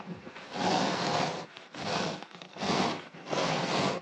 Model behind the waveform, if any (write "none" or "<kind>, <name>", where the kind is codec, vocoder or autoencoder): codec, SNAC